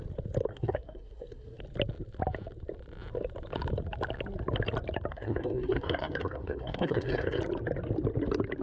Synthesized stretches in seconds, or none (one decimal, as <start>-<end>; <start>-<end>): 0.5-1.6; 5.1-7.4